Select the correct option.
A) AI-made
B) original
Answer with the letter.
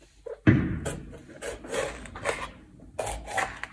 B